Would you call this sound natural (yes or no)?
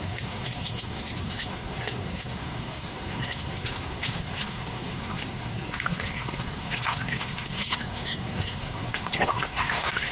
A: no